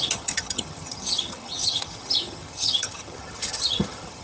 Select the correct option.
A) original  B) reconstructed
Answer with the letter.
B